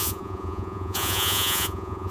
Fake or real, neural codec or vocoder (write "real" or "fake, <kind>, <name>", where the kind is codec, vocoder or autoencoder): fake, vocoder, Vocos